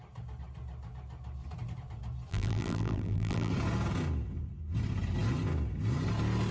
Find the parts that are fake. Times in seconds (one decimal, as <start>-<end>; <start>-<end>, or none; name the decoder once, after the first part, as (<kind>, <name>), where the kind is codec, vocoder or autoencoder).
2.3-3.5 (vocoder, BigVGAN v2)